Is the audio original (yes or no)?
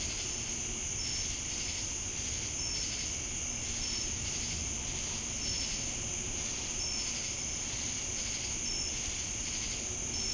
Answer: yes